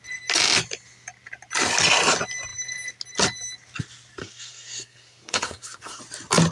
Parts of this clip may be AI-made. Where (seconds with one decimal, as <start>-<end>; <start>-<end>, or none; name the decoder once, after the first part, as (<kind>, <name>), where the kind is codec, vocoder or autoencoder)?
4.2-6.0 (codec, SNAC)